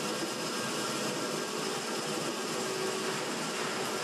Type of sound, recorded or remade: recorded